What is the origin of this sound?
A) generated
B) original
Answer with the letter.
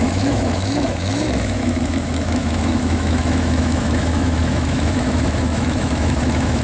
A